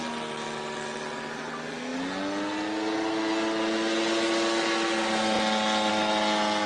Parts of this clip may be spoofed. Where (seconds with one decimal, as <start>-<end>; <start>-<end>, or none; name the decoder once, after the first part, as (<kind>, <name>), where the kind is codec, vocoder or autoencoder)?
none